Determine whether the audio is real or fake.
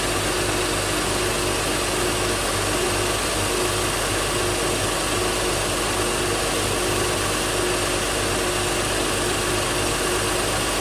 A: real